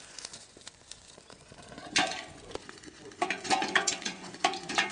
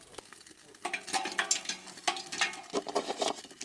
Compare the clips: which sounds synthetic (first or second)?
first